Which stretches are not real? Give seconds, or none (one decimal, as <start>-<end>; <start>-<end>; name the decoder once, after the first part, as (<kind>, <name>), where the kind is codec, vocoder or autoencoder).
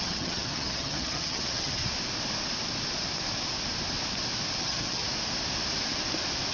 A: 0.0-1.8 (vocoder, HiFi-GAN); 4.6-5.0